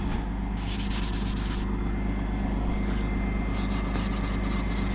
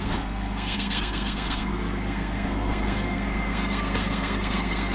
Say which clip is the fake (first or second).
second